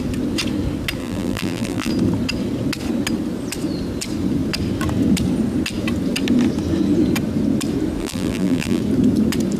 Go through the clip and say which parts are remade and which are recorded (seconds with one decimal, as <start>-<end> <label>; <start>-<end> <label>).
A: 0.0-1.0 recorded; 1.0-1.9 remade; 1.9-8.0 recorded; 8.0-8.8 remade; 8.8-9.6 recorded